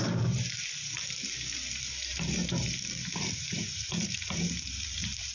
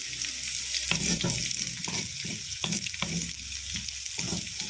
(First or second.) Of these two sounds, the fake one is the first